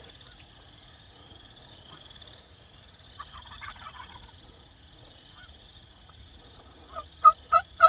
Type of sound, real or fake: fake